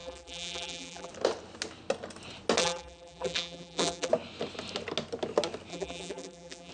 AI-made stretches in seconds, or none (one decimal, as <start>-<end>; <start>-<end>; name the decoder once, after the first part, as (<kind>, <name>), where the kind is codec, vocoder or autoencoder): 0.0-1.1 (vocoder, BigVGAN v2); 2.6-4.1; 5.7-6.7